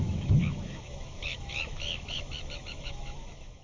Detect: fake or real fake